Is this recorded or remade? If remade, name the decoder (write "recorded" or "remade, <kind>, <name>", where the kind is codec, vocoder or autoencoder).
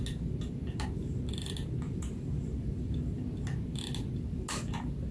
recorded